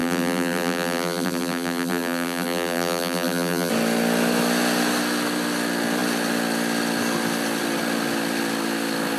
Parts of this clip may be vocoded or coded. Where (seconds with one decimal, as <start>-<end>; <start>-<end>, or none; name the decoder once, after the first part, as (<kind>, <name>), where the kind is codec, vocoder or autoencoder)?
0.0-3.7 (vocoder, BigVGAN v2)